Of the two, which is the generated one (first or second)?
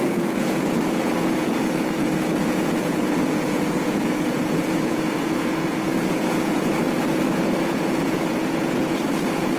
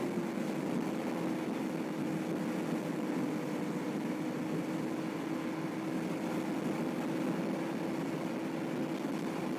first